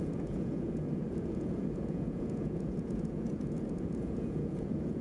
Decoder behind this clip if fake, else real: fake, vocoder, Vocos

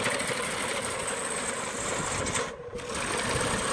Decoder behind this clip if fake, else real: real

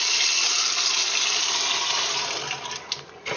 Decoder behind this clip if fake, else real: real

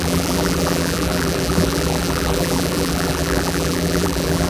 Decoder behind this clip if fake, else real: fake, vocoder, BigVGAN v2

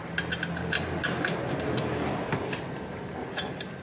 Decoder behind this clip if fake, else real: real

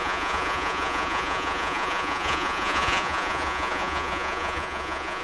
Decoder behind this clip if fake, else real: fake, vocoder, Vocos